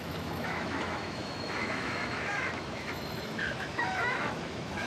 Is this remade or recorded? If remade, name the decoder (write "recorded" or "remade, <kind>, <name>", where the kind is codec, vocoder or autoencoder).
remade, autoencoder, DAC-VAE